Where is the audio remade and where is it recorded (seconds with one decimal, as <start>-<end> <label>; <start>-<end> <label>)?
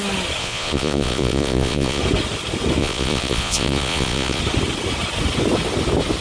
0.0-0.4 recorded; 0.4-2.0 remade; 2.0-2.8 recorded; 2.8-4.4 remade; 4.4-6.2 recorded